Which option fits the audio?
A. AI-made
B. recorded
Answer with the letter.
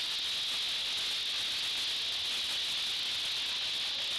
B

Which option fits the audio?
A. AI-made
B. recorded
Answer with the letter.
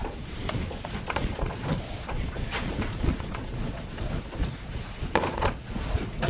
A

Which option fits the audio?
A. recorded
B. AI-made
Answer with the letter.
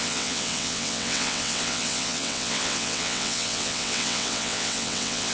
B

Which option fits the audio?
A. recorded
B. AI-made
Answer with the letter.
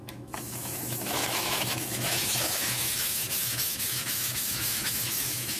B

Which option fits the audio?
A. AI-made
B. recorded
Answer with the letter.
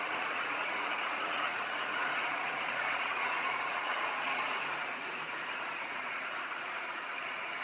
A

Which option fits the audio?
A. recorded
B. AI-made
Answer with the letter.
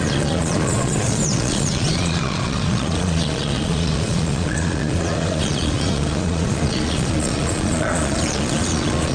B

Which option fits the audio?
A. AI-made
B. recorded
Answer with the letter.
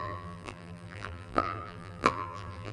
A